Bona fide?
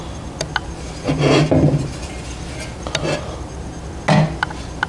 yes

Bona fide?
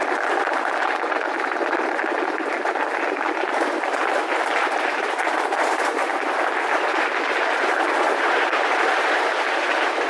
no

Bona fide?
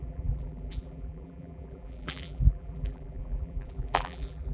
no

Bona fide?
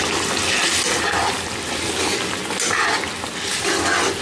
yes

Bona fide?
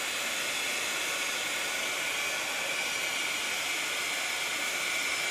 yes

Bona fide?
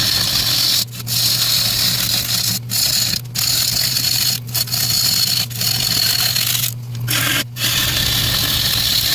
yes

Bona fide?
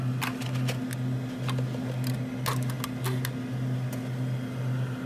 yes